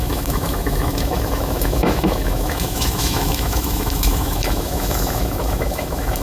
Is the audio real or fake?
fake